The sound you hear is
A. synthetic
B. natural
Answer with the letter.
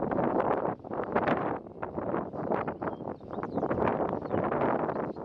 A